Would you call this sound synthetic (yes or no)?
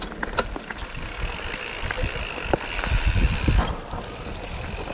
no